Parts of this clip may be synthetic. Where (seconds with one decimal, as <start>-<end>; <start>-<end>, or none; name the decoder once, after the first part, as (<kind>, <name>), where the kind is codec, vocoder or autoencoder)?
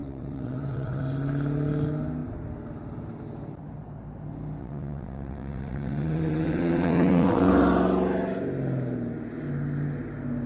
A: 0.0-1.0 (vocoder, WaveNeXt); 4.6-7.5